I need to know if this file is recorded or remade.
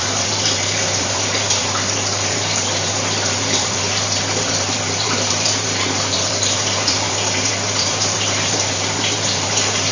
remade